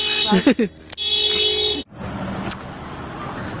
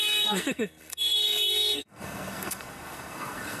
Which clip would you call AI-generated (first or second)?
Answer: second